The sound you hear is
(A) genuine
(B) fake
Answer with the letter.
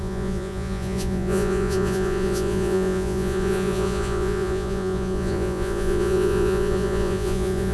B